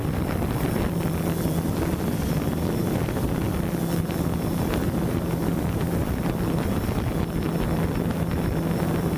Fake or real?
real